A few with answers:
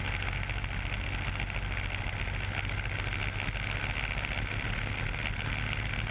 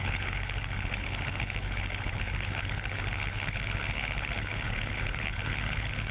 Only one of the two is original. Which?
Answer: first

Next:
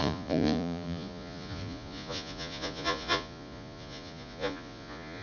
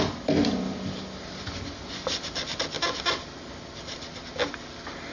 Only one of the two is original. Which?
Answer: second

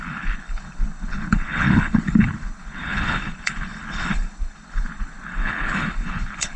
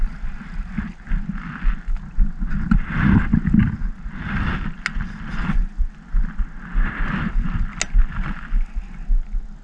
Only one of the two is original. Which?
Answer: second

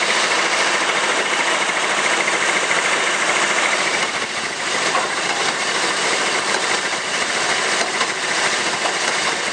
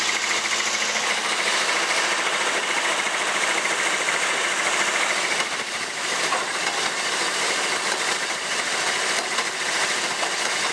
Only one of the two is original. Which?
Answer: second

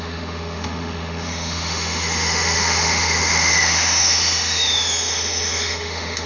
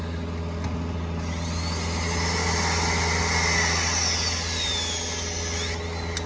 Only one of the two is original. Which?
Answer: second